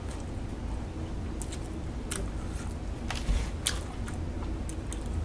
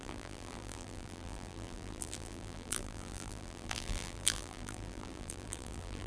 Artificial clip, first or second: second